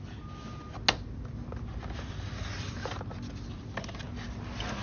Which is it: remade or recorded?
recorded